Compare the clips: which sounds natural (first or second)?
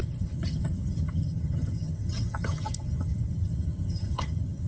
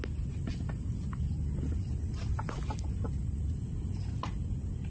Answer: second